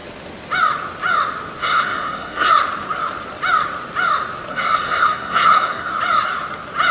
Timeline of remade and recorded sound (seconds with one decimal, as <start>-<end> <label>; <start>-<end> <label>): 0.0-1.6 recorded; 1.6-2.5 remade; 2.5-4.5 recorded; 4.5-5.9 remade; 5.9-6.9 recorded